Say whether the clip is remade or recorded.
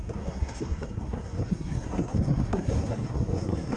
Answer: remade